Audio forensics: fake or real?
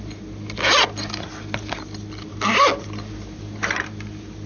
real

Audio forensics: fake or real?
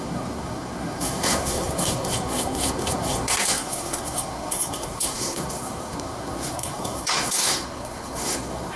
fake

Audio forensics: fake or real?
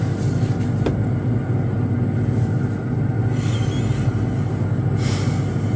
real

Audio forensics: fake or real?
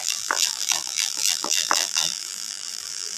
fake